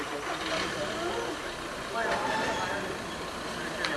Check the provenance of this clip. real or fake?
real